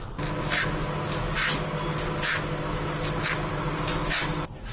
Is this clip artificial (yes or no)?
no